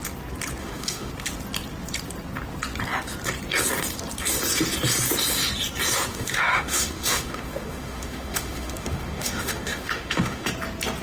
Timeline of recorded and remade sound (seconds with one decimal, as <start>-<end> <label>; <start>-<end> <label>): 0.0-0.6 recorded; 0.6-1.1 remade; 1.1-6.1 recorded; 6.1-10.5 remade; 10.5-11.0 recorded